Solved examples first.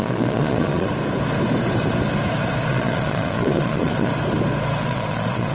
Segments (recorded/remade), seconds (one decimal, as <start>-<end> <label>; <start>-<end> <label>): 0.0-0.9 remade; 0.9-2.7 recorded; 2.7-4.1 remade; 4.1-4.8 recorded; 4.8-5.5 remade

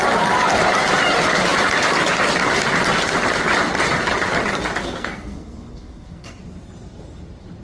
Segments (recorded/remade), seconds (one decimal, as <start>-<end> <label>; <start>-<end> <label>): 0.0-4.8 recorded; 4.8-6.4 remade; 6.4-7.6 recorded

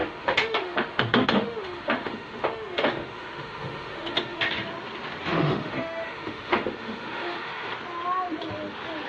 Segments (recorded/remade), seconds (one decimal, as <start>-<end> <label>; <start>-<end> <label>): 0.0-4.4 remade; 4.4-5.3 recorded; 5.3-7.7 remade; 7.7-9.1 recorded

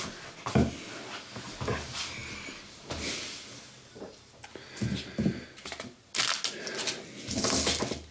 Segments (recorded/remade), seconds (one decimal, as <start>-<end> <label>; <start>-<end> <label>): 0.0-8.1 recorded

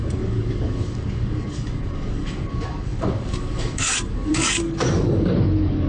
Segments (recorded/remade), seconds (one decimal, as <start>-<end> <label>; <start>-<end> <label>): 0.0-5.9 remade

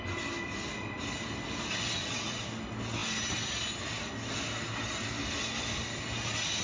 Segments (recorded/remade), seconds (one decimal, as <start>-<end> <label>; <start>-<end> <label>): 0.0-2.0 recorded; 2.0-2.5 remade; 2.5-6.6 recorded

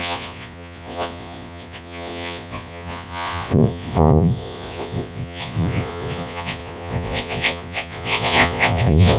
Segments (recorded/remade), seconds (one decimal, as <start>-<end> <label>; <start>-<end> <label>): 0.0-9.2 remade